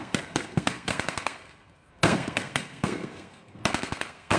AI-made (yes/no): yes